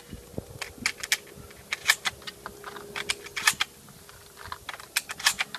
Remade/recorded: recorded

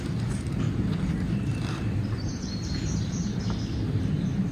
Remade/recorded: remade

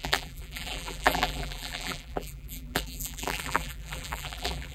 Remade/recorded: remade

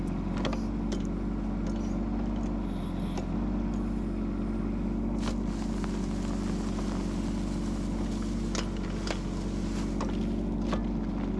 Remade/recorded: recorded